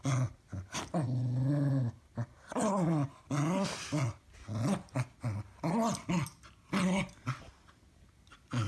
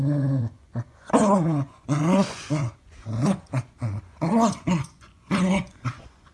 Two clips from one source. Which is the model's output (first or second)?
second